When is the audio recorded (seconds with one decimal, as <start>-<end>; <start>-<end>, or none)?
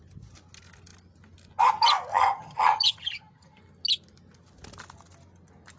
0.0-2.1; 3.6-5.8